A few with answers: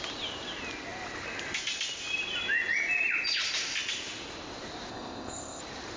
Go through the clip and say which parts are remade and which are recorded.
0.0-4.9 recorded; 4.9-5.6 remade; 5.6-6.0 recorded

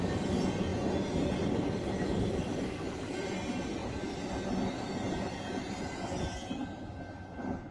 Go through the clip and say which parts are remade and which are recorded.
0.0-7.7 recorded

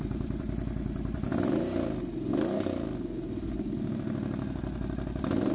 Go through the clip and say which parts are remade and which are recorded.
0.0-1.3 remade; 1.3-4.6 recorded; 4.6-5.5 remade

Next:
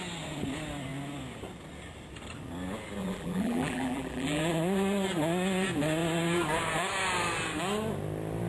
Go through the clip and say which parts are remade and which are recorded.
0.0-3.0 recorded; 3.0-4.4 remade; 4.4-8.5 recorded

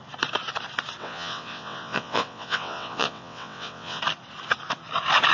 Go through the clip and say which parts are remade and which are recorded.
0.0-1.0 recorded; 1.0-4.0 remade; 4.0-5.3 recorded